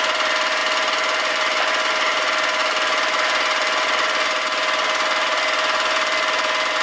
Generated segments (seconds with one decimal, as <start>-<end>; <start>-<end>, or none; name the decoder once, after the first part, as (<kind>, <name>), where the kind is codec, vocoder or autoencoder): none